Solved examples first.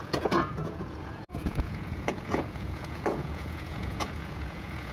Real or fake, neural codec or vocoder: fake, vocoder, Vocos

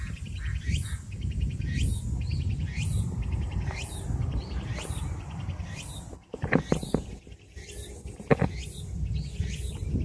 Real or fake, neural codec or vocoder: real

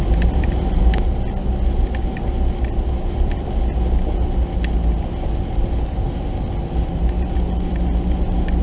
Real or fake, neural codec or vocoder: real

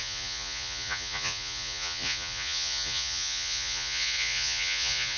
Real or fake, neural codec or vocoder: fake, vocoder, Vocos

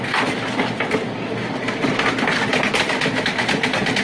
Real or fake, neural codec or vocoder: real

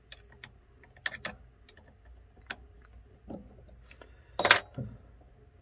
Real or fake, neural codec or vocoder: real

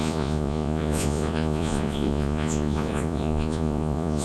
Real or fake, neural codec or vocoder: fake, vocoder, Vocos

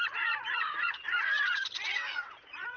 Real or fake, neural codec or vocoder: fake, vocoder, Vocos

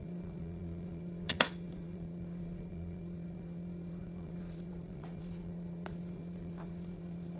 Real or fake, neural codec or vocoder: fake, vocoder, Vocos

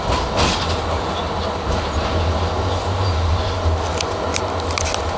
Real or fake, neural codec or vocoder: real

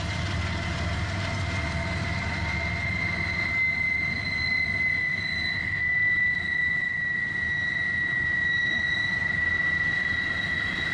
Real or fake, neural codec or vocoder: real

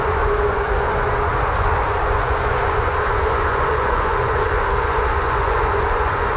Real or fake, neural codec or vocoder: fake, vocoder, Vocos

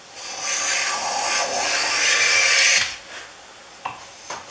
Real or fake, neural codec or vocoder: real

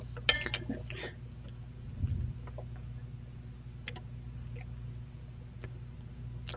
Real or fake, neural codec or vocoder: real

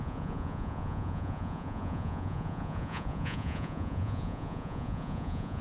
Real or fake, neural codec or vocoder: fake, vocoder, Vocos